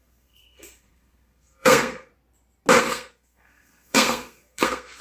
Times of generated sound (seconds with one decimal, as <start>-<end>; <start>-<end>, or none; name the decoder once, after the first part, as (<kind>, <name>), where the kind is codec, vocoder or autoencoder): 0.0-2.1 (codec, SNAC); 2.8-5.0